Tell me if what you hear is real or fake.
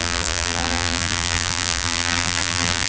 fake